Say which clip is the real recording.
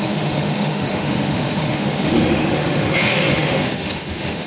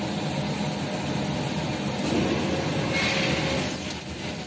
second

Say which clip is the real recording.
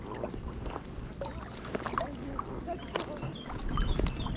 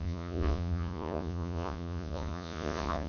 first